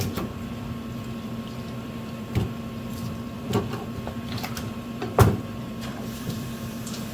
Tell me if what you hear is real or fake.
fake